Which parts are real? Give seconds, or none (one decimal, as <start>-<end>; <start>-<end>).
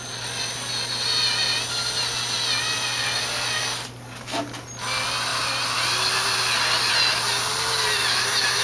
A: 0.0-8.6